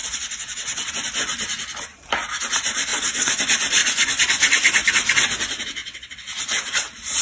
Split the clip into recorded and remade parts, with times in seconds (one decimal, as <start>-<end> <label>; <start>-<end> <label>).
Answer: 0.0-0.9 remade; 0.9-2.9 recorded; 2.9-3.4 remade; 3.4-5.8 recorded; 5.8-6.3 remade; 6.3-7.2 recorded